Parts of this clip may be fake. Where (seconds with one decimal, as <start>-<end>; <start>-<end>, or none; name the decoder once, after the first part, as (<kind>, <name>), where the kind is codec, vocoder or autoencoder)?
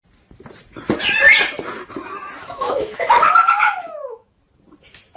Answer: 2.4-4.4 (autoencoder, DAC-VAE)